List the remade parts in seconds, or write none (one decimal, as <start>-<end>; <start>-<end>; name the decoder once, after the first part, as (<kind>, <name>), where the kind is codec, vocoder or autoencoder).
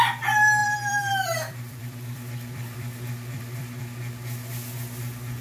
0.6-3.8 (vocoder, BigVGAN v2)